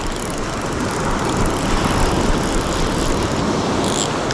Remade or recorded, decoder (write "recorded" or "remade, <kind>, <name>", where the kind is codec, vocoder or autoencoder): recorded